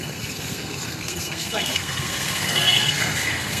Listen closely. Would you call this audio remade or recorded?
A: remade